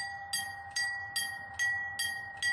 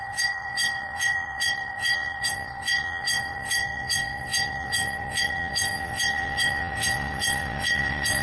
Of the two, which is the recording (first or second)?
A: first